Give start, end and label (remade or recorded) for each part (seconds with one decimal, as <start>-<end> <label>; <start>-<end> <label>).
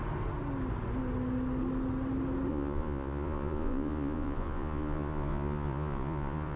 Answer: 0.0-2.5 recorded; 2.5-6.6 remade